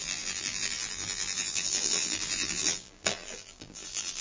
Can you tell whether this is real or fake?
fake